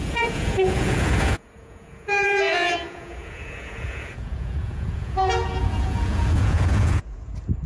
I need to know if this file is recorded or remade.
remade